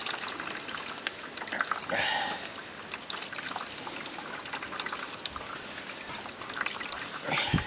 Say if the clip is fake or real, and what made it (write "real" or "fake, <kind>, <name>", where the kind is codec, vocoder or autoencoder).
real